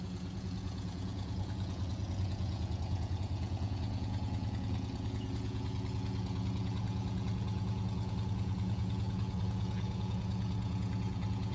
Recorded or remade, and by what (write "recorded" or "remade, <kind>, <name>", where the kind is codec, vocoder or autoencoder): remade, vocoder, Vocos